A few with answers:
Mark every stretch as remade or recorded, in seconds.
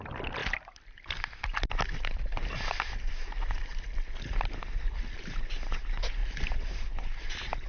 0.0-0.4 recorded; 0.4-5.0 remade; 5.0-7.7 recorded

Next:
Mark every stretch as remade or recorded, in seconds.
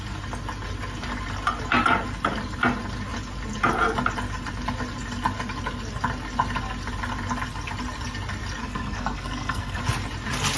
0.0-8.6 recorded; 8.6-9.8 remade; 9.8-10.6 recorded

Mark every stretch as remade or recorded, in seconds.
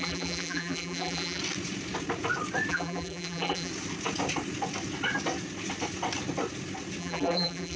0.0-1.4 remade; 1.4-2.7 recorded; 2.7-3.7 remade; 3.7-7.0 recorded; 7.0-7.8 remade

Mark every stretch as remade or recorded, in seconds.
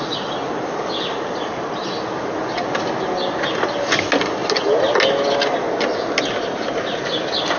0.0-7.6 recorded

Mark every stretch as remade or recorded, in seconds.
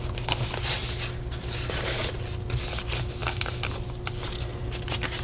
0.0-5.2 recorded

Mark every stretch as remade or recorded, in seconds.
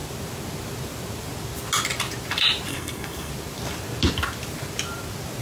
0.0-2.7 recorded; 2.7-3.3 remade; 3.3-5.4 recorded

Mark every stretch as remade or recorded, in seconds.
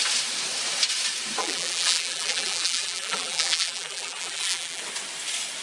0.0-1.4 recorded; 1.4-4.8 remade; 4.8-5.6 recorded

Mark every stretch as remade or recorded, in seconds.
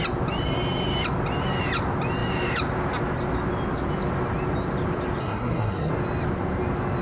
0.0-5.2 recorded; 5.2-5.9 remade; 5.9-7.0 recorded